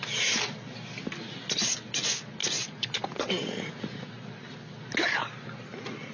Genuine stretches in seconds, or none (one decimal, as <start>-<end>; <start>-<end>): 0.0-2.4; 3.8-6.1